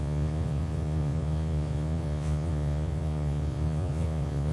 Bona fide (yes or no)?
no